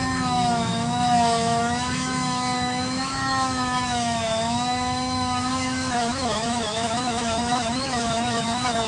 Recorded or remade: remade